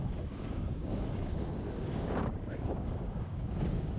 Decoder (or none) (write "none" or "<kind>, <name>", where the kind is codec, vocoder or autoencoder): codec, DAC